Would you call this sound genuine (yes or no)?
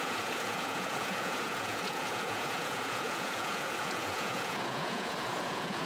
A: no